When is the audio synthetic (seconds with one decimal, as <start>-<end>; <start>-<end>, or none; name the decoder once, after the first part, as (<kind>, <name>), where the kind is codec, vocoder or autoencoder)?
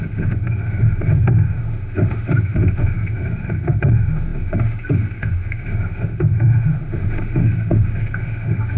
0.0-8.8 (autoencoder, DAC-VAE)